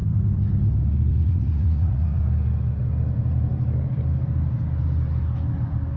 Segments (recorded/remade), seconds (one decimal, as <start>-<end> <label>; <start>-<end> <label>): 0.0-1.1 recorded; 1.1-2.2 remade; 2.2-6.0 recorded